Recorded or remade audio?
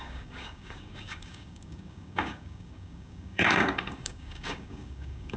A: remade